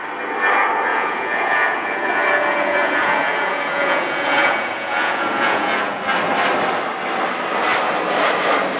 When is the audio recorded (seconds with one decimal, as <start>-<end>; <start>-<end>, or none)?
0.0-0.9; 6.0-8.8